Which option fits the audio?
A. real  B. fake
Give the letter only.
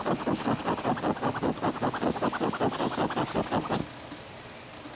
A